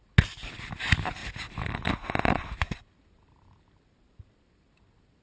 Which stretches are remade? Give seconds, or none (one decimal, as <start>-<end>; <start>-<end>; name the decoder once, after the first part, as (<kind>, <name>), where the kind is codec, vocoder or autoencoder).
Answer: none